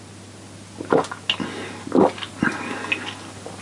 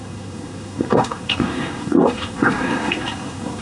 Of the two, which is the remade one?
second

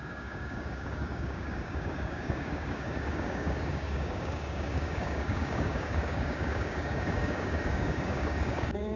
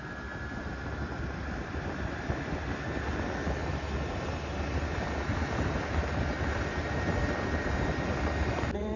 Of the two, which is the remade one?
first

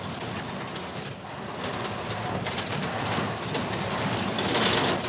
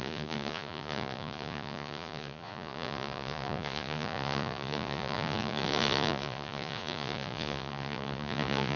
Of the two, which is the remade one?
second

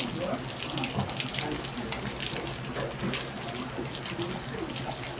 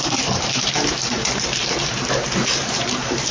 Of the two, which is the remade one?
second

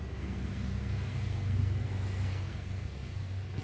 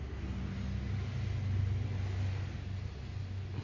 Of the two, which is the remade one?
first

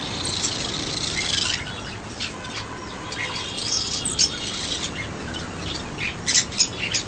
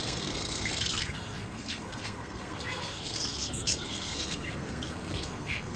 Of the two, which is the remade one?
second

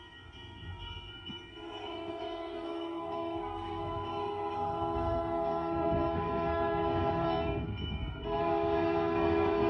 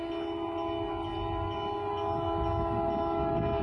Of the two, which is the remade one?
first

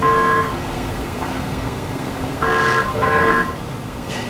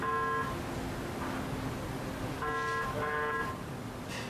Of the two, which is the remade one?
first